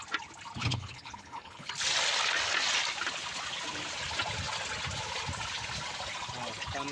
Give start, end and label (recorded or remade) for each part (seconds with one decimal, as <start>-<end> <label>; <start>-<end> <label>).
0.0-0.6 recorded; 0.6-1.7 remade; 1.7-6.9 recorded